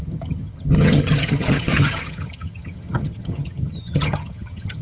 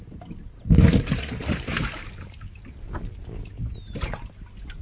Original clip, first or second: second